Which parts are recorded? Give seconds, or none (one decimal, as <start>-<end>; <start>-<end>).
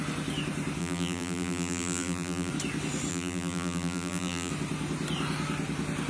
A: 0.0-0.8; 2.5-3.1; 4.5-6.1